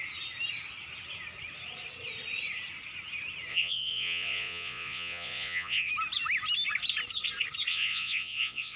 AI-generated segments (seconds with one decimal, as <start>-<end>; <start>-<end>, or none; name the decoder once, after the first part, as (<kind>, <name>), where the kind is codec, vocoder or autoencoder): 3.5-5.9 (vocoder, Vocos); 7.7-8.8